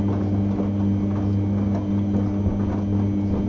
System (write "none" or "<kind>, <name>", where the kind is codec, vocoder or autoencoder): none